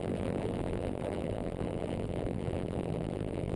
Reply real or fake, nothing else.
fake